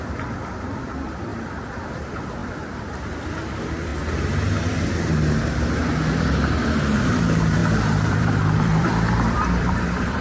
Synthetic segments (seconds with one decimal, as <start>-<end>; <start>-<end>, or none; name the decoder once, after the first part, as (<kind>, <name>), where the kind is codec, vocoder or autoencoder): 0.0-3.9 (vocoder, BigVGAN v2); 6.8-10.2